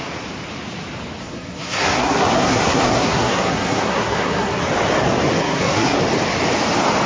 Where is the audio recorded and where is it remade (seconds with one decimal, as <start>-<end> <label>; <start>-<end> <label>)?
0.0-1.2 recorded; 1.2-4.6 remade; 4.6-5.4 recorded; 5.4-6.0 remade; 6.0-7.1 recorded